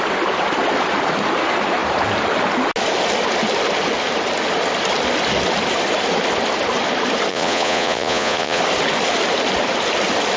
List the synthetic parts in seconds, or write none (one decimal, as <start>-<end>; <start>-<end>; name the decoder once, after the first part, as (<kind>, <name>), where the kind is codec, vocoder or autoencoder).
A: 7.3-8.6 (vocoder, Vocos)